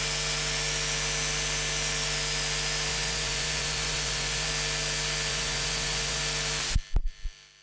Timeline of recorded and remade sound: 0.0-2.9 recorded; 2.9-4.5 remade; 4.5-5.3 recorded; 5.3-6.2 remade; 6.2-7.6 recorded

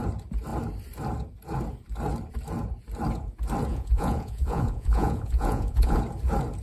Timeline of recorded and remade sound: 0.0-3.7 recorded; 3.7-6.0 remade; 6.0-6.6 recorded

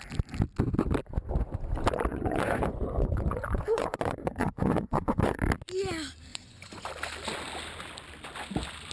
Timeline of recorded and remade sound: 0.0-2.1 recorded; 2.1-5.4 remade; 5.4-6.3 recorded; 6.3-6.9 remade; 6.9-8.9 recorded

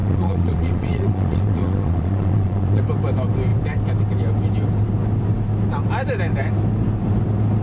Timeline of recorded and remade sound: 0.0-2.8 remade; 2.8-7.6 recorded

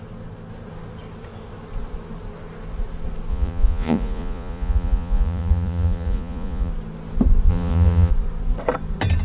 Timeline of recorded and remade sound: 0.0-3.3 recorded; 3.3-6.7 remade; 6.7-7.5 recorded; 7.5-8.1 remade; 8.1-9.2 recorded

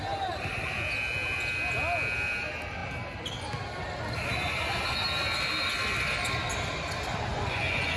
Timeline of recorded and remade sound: 0.0-7.3 recorded; 7.3-8.0 remade